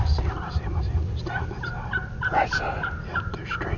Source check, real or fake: real